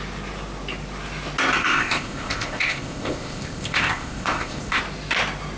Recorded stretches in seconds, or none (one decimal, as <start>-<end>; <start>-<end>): 0.0-1.6; 4.8-5.6

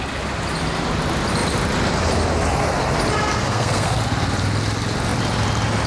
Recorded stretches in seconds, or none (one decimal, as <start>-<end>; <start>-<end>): 0.0-3.5; 4.0-5.9

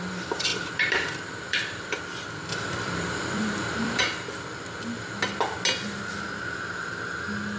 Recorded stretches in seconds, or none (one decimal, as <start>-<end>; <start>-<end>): 0.0-0.5; 2.0-2.5; 4.0-7.6

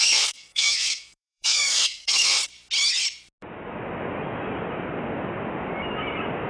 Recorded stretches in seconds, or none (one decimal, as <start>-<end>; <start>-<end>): 2.4-6.5

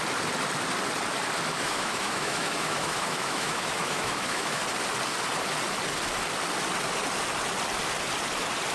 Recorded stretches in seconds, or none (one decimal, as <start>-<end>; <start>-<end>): 0.0-1.5; 4.6-8.7

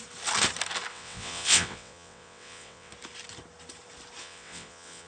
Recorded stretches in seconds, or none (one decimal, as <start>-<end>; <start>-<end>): 0.0-0.9; 2.9-4.2

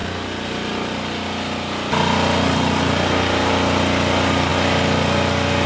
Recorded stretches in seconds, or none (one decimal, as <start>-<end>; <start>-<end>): 0.0-5.7